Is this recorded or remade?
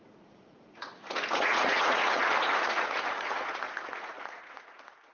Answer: remade